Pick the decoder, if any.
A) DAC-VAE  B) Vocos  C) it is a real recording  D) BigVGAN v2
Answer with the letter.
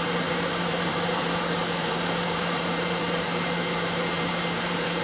D